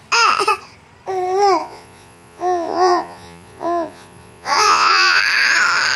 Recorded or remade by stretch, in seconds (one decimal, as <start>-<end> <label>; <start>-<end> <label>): 0.0-1.6 recorded; 1.6-5.2 remade; 5.2-6.0 recorded